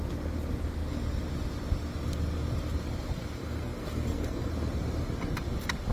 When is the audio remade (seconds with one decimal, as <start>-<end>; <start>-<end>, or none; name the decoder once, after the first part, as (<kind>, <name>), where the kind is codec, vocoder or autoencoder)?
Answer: 3.4-4.5 (codec, SNAC)